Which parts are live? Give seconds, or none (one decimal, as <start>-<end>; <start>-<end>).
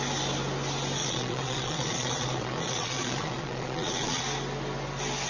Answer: 0.0-1.0; 4.2-5.3